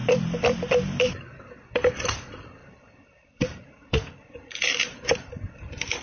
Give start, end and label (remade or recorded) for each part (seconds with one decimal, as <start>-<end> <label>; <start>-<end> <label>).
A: 0.0-1.1 remade; 1.1-2.6 recorded; 2.6-5.3 remade; 5.3-6.0 recorded